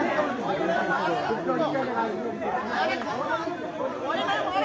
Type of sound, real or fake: real